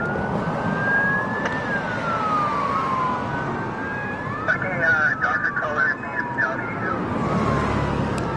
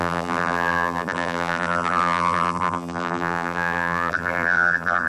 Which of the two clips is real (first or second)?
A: first